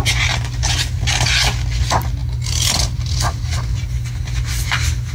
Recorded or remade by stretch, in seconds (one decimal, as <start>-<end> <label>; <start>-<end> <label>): 0.0-5.1 recorded